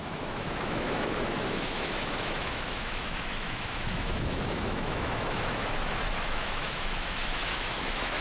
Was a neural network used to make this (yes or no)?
yes